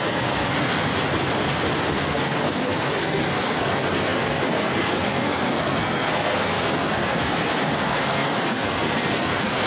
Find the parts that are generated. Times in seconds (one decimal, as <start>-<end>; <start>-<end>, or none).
0.0-0.9; 1.9-9.7